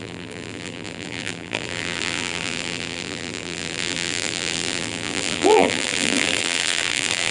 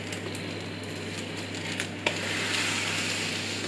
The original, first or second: second